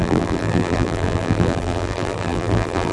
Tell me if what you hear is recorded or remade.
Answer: remade